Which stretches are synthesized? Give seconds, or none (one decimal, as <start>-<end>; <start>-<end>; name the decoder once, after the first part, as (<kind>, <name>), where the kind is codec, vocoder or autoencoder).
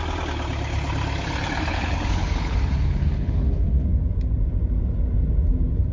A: 1.7-3.8 (codec, HILCodec)